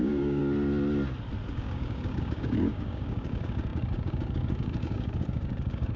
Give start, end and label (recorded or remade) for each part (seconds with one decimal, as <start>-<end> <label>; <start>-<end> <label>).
0.0-0.4 remade; 0.4-1.5 recorded; 1.5-6.0 remade